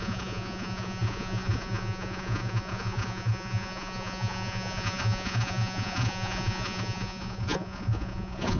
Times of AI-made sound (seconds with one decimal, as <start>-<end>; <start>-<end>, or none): 0.0-8.6